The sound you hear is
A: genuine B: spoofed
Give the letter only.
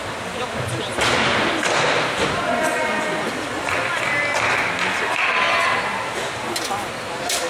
A